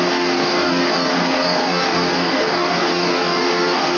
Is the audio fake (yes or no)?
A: yes